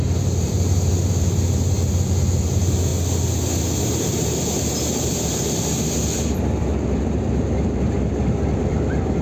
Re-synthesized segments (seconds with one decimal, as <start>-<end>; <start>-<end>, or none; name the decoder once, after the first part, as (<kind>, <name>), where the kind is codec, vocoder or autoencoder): 0.0-2.9 (vocoder, BigVGAN v2); 3.8-9.2